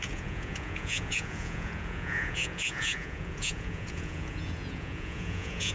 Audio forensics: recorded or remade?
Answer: remade